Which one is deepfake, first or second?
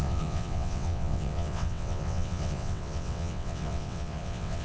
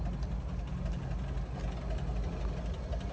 first